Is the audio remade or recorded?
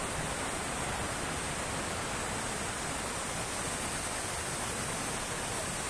recorded